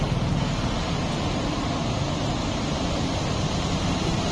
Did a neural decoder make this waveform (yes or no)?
no